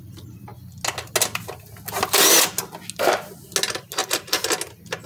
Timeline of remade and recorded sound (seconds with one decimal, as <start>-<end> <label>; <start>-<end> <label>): 0.0-5.1 recorded